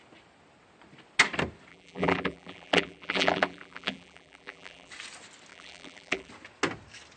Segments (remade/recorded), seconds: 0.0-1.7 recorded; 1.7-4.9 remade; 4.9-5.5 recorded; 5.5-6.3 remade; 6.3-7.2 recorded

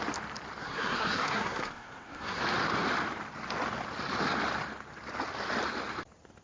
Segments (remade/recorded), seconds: 0.0-0.6 recorded; 0.6-2.4 remade; 2.4-6.4 recorded

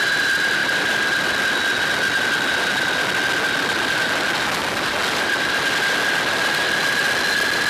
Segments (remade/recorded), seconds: 0.0-0.6 recorded; 0.6-1.4 remade; 1.4-4.6 recorded; 4.6-5.6 remade; 5.6-7.7 recorded

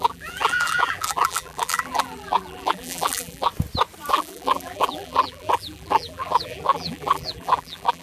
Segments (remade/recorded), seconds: 0.0-3.5 remade; 3.5-4.1 recorded; 4.1-8.0 remade